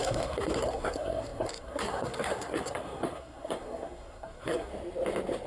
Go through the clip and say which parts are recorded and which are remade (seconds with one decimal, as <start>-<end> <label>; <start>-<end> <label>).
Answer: 0.0-4.7 remade; 4.7-5.5 recorded